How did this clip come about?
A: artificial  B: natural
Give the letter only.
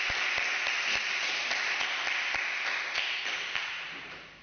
B